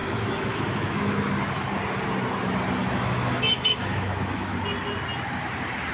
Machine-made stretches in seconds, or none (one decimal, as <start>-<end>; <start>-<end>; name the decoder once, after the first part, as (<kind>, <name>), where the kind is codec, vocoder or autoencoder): 0.0-1.3 (autoencoder, DAC-VAE); 2.8-4.5